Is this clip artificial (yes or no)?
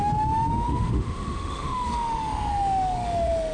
yes